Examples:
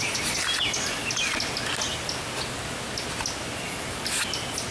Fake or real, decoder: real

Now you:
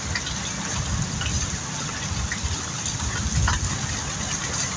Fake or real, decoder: real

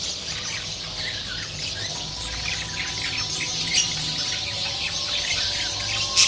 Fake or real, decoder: real